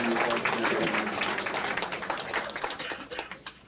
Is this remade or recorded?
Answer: recorded